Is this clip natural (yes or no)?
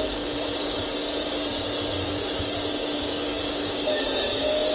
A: no